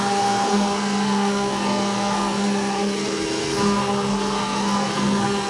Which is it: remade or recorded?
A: remade